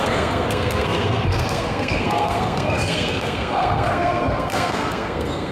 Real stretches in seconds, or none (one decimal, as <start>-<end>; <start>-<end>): none